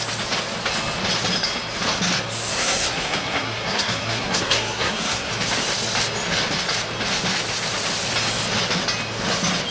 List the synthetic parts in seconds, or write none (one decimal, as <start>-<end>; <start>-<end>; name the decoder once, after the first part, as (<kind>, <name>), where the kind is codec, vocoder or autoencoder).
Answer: 2.5-5.3 (codec, SNAC)